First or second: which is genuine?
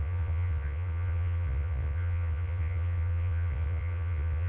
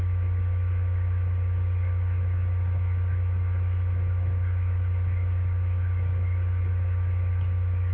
second